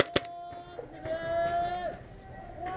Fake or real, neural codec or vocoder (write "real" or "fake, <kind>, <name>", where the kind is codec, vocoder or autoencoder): real